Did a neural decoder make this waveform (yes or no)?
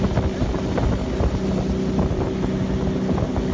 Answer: no